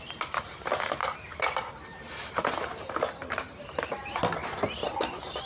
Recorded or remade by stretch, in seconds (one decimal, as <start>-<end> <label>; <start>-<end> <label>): 0.0-1.0 recorded; 1.0-4.2 remade; 4.2-5.5 recorded